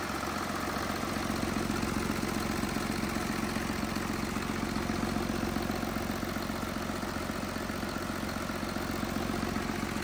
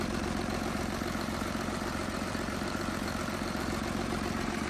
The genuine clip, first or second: first